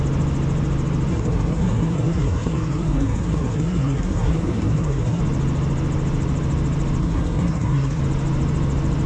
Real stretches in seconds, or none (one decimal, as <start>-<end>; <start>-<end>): 0.0-1.1; 5.2-7.0; 8.0-9.1

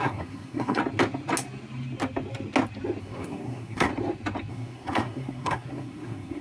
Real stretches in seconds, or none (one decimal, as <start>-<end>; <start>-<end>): 0.8-3.0; 3.9-4.5